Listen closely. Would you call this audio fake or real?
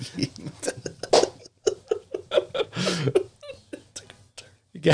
real